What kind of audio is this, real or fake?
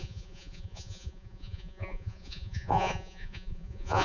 fake